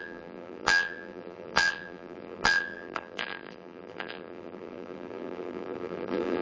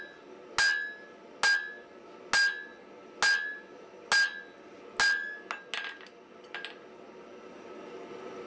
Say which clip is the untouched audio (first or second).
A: second